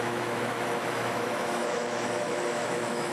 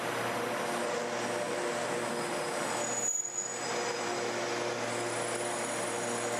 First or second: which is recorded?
second